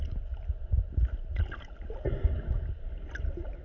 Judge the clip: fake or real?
real